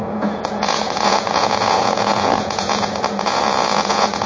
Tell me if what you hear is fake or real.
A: fake